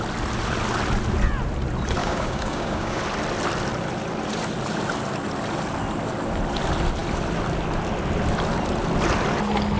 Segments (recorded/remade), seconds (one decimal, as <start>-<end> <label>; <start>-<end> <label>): 0.0-2.0 recorded; 2.0-3.0 remade; 3.0-9.8 recorded